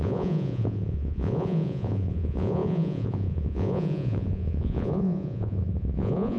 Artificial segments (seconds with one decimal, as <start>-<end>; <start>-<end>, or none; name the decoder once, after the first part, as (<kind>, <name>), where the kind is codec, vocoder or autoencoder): 0.0-6.4 (vocoder, Vocos)